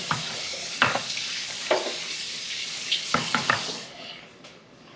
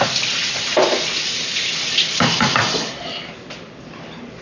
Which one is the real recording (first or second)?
second